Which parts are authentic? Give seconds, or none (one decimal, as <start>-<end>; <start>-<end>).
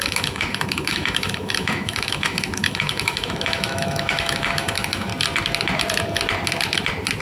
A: 5.1-7.2